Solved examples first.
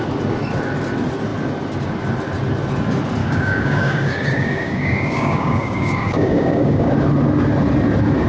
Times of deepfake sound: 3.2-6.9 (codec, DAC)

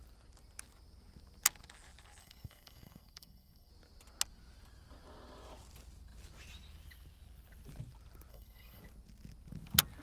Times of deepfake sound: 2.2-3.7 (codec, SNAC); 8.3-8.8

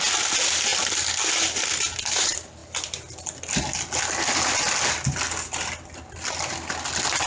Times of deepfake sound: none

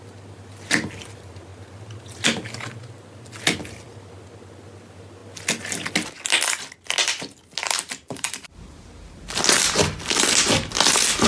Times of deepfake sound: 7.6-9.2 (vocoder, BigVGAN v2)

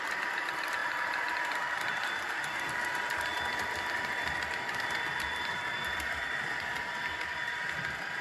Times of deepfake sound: 0.0-8.2 (vocoder, BigVGAN v2)